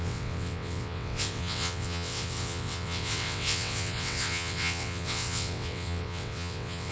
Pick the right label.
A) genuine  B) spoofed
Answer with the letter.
B